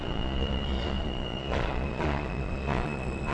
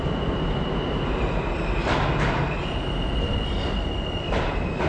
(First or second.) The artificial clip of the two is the first